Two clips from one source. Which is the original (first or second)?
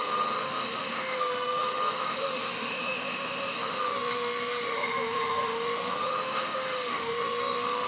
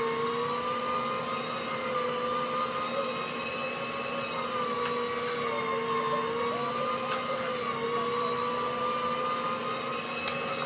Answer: second